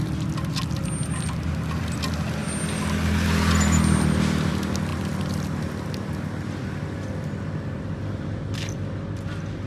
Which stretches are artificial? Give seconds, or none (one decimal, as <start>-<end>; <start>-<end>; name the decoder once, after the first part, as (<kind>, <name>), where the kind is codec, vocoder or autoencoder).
none